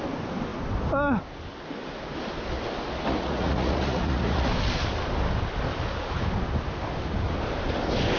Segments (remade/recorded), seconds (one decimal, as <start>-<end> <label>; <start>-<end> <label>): 0.0-3.1 recorded; 3.1-4.5 remade; 4.5-8.2 recorded